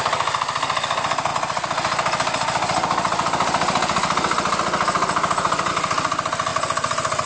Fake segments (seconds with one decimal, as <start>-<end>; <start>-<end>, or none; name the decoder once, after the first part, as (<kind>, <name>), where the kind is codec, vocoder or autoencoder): none